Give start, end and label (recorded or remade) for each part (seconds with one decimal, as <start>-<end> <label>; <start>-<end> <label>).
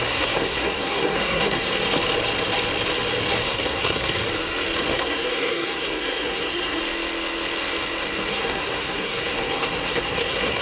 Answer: 0.0-1.7 remade; 1.7-3.4 recorded; 3.4-4.2 remade; 4.2-4.8 recorded; 4.8-6.8 remade; 6.8-8.3 recorded; 8.3-10.6 remade